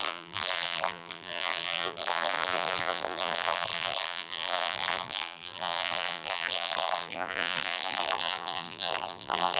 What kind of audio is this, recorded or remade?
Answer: remade